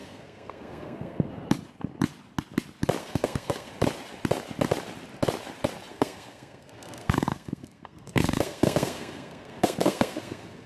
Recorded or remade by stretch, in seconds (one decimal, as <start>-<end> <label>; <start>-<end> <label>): 0.0-1.3 remade; 1.3-3.0 recorded; 3.0-3.7 remade; 3.7-5.9 recorded; 5.9-10.7 remade